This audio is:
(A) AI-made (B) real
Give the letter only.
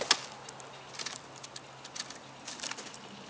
B